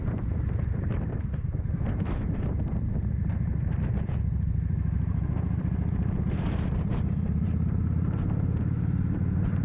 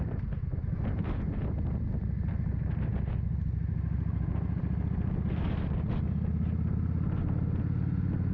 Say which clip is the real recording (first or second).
second